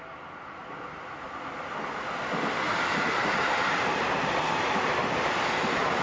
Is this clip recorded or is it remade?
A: recorded